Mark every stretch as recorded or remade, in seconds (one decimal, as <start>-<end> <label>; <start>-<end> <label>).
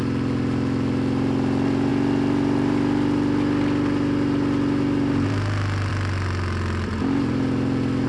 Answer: 0.0-8.1 recorded